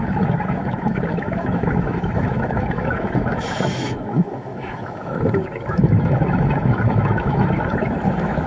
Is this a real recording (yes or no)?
no